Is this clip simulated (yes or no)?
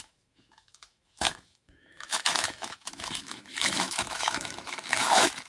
yes